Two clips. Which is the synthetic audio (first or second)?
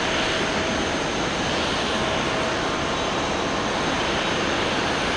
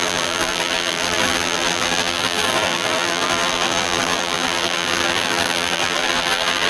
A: second